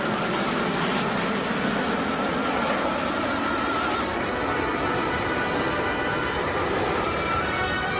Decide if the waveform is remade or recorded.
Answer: recorded